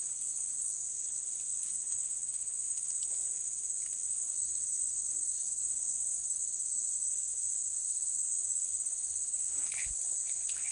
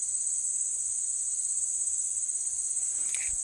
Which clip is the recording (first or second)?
second